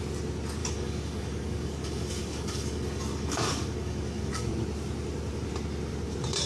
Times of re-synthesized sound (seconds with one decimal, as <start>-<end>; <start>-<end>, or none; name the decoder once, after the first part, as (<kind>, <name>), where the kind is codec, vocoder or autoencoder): 0.6-4.5 (codec, DAC)